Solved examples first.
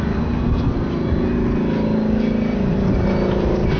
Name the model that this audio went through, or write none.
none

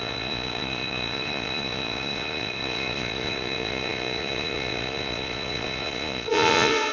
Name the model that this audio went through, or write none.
vocoder, Vocos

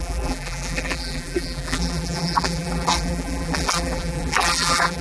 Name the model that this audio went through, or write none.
vocoder, BigVGAN v2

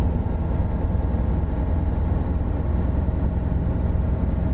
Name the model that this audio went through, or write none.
none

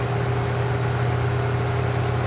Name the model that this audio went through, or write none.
none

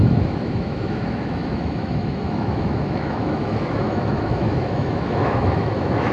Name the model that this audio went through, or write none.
autoencoder, DAC-VAE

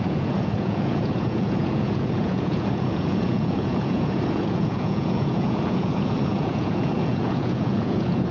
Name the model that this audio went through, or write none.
vocoder, Vocos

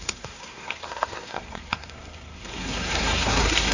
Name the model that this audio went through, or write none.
codec, SNAC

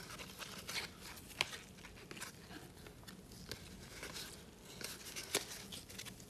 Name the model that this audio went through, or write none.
none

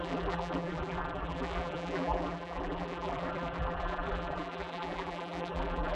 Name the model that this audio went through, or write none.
vocoder, BigVGAN v2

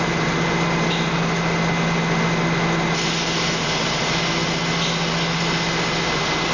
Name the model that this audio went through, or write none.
none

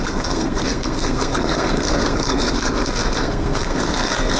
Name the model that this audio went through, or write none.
codec, SNAC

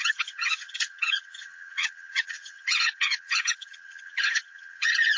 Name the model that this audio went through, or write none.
vocoder, HiFi-GAN